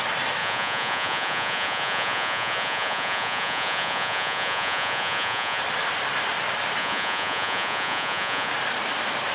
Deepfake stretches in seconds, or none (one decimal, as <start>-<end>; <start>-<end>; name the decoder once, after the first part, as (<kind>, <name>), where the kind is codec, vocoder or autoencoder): 0.4-5.6 (vocoder, Vocos); 6.8-8.5